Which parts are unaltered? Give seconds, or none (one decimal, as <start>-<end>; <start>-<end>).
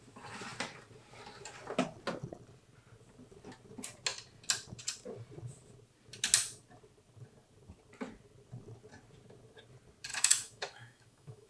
0.0-10.1